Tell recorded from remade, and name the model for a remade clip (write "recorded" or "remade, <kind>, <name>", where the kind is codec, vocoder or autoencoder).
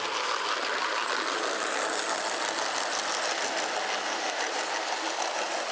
recorded